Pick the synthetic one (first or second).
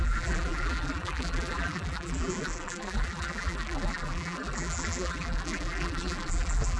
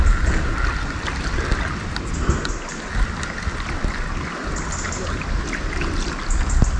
first